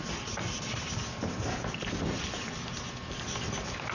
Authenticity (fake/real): real